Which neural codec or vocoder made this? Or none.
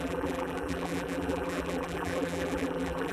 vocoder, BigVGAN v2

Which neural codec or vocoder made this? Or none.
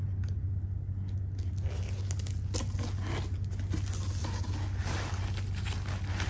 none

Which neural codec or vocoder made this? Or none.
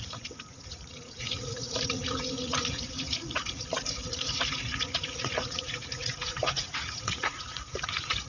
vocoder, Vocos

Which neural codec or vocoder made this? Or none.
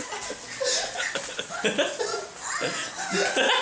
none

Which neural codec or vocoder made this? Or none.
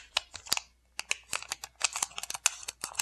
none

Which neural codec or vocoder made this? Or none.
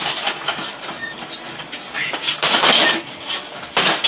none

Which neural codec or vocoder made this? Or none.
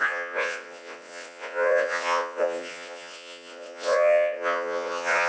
vocoder, WaveNeXt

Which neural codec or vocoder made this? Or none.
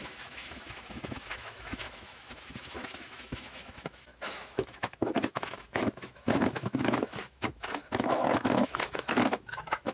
autoencoder, DAC-VAE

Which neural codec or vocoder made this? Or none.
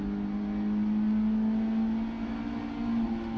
none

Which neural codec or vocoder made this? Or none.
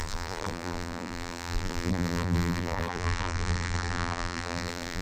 vocoder, BigVGAN v2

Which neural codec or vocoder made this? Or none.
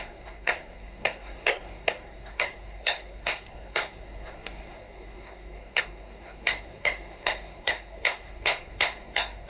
codec, SNAC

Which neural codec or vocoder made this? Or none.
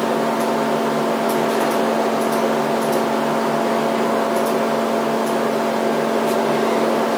none